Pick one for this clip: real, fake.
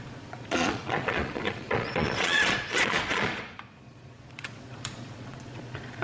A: fake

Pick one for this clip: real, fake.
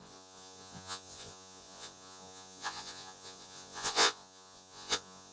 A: fake